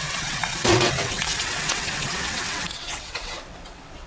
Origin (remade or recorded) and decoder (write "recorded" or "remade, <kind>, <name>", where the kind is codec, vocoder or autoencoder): remade, vocoder, WaveNeXt